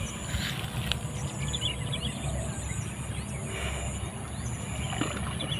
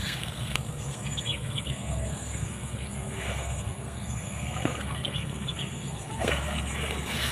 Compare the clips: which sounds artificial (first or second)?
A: second